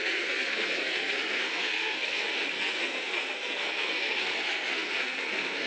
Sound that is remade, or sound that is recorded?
remade